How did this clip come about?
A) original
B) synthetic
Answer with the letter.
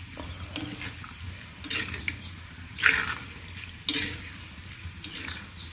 A